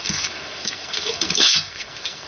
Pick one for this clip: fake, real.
fake